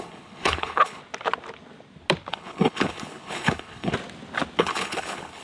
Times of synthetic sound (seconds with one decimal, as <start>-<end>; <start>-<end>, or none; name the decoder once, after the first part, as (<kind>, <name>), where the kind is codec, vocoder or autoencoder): 0.0-1.0 (codec, HILCodec); 2.3-3.9; 4.6-5.4